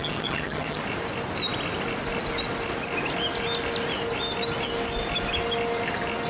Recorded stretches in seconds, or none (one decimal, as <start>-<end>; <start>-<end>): 0.8-6.3